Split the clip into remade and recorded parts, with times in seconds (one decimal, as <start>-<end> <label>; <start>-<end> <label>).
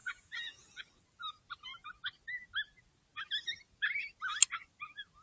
0.0-0.6 remade; 0.6-5.2 recorded